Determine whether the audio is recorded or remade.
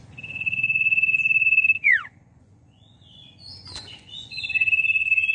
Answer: remade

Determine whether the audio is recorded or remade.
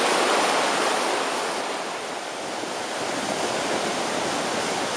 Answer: recorded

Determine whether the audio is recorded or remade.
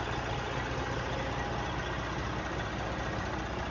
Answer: recorded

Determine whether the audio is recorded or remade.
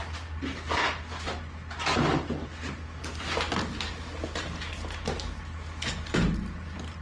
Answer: recorded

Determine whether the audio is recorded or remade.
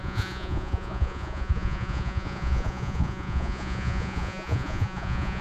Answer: remade